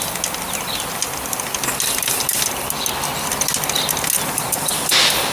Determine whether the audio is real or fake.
real